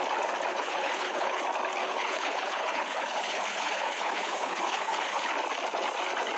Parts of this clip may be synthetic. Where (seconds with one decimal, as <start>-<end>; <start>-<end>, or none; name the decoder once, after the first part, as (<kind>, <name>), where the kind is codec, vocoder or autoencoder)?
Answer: 0.5-1.4 (codec, HILCodec); 1.8-5.3